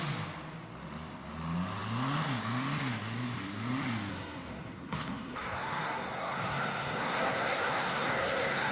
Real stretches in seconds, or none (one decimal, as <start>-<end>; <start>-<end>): 0.0-4.1